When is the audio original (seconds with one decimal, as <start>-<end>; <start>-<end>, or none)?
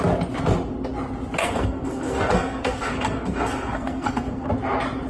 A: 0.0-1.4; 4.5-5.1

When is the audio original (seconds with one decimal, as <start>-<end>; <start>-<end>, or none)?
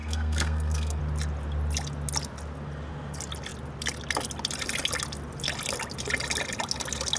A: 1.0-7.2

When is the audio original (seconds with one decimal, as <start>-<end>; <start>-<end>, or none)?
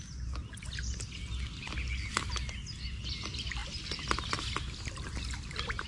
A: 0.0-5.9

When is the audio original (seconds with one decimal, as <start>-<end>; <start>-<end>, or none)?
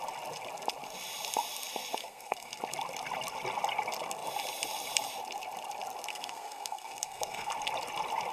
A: 0.0-2.0; 2.6-6.1; 7.5-8.3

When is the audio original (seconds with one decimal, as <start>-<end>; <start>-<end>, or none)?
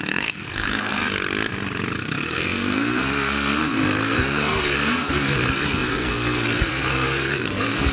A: 1.0-2.0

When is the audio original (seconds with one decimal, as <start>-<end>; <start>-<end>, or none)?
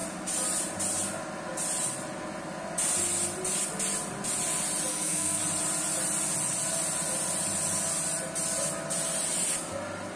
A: 0.0-4.9; 5.4-10.2